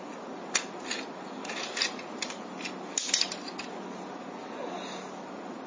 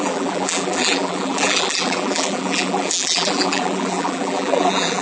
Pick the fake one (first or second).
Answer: second